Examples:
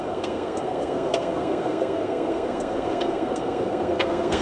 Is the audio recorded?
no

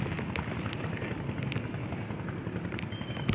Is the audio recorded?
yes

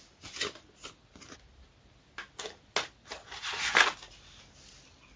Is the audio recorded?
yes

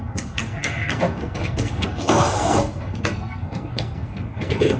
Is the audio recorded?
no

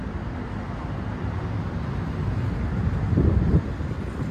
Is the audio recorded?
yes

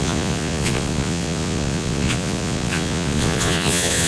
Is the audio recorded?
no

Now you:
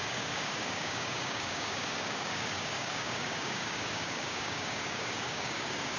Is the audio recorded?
no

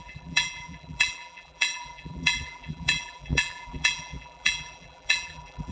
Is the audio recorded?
no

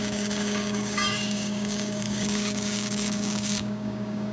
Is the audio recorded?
no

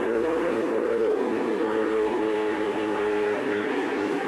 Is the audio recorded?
no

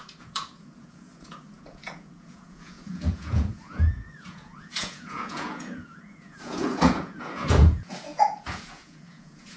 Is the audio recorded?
no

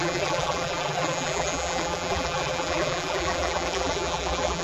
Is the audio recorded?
no